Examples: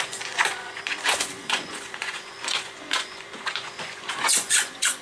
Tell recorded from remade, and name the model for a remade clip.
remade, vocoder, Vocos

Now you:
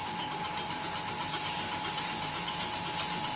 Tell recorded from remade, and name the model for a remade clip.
recorded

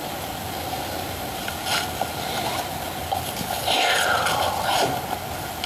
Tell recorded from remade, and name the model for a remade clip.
recorded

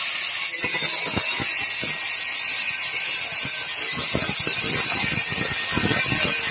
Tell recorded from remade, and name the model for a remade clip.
recorded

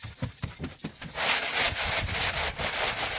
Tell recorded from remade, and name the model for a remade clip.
recorded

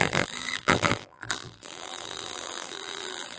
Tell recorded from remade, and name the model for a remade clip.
remade, vocoder, BigVGAN v2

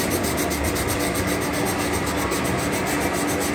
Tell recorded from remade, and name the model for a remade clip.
recorded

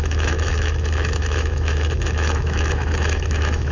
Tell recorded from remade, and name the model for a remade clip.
remade, autoencoder, DAC-VAE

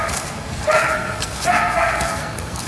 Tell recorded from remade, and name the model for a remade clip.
remade, codec, SNAC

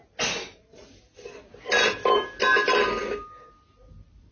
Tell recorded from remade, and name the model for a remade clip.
recorded